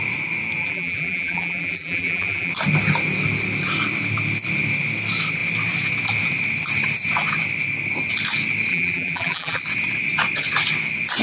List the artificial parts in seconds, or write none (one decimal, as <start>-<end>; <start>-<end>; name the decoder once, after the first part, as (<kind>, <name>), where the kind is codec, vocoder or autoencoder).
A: 0.6-2.5 (vocoder, BigVGAN v2); 8.7-9.6

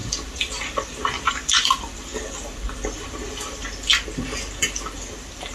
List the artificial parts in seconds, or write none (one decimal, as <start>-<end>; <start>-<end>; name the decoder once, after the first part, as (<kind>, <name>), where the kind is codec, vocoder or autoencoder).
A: 0.0-5.5 (vocoder, BigVGAN v2)

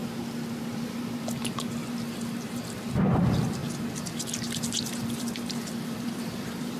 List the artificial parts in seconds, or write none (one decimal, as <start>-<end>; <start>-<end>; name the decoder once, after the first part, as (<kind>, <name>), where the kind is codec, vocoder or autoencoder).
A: 0.8-3.6 (vocoder, BigVGAN v2); 5.0-6.8

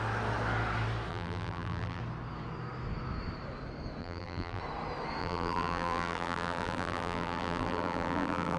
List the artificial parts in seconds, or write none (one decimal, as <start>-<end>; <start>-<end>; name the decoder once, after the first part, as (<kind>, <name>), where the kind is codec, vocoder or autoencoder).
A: 1.1-2.0 (vocoder, BigVGAN v2); 4.0-4.6; 5.2-8.6

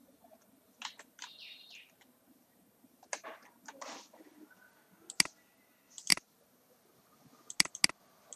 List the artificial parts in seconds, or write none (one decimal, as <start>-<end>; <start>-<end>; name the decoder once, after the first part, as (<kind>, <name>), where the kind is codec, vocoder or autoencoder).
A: 0.0-4.6 (vocoder, BigVGAN v2); 6.1-7.3

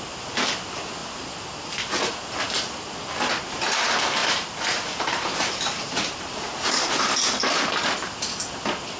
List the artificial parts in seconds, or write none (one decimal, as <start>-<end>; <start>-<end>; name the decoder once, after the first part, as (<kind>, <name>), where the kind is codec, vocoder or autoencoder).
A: 4.2-6.9 (vocoder, BigVGAN v2)

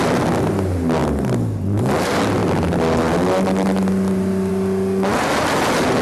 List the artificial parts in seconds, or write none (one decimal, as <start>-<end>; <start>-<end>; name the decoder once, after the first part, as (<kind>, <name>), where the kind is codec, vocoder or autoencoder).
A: 2.4-4.5 (vocoder, BigVGAN v2)

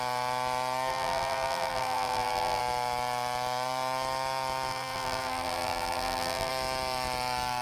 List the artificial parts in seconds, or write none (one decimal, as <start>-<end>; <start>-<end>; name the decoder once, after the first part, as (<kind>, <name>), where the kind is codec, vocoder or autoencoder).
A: 0.9-2.6 (vocoder, BigVGAN v2); 4.7-6.5